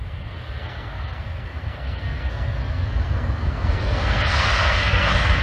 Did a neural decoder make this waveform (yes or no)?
yes